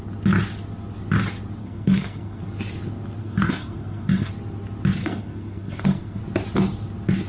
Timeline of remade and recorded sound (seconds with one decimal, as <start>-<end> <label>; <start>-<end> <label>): 0.0-1.6 recorded; 1.6-2.4 remade; 2.4-3.2 recorded; 3.2-4.3 remade; 4.3-5.0 recorded; 5.0-6.2 remade; 6.2-7.3 recorded